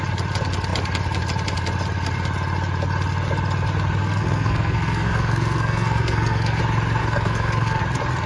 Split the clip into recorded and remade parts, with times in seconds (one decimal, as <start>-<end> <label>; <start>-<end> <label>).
0.0-4.0 recorded; 4.0-6.6 remade; 6.6-7.0 recorded; 7.0-7.8 remade; 7.8-8.3 recorded